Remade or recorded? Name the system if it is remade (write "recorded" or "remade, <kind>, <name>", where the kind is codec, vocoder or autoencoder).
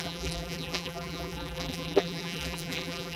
remade, vocoder, BigVGAN v2